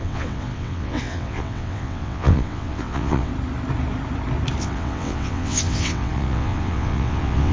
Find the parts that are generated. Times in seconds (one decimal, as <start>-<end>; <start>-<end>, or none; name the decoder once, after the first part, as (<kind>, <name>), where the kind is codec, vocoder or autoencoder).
0.0-3.3 (vocoder, WaveNeXt); 4.6-7.5

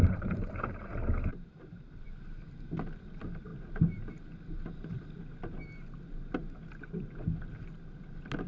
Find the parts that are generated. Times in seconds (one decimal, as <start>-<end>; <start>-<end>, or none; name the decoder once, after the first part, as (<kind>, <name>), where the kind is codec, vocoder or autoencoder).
0.0-0.9 (vocoder, BigVGAN v2); 1.3-2.0